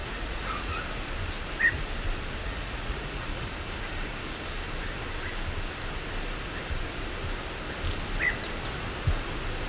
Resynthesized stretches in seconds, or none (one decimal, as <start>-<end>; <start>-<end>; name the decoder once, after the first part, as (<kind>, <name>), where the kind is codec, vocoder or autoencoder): 0.0-0.8 (vocoder, Vocos); 2.4-3.4